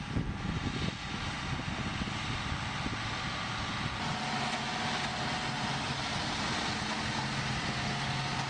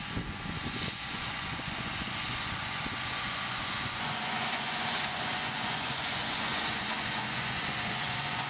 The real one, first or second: first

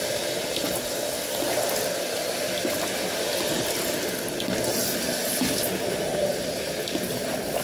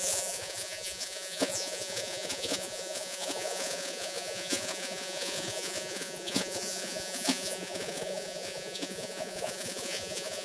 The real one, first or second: first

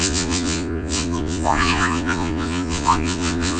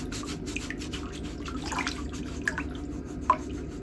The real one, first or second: second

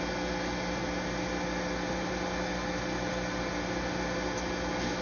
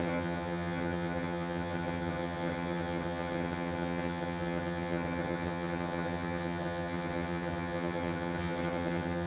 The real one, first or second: first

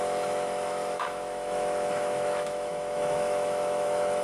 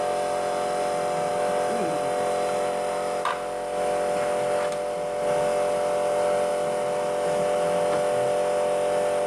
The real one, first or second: second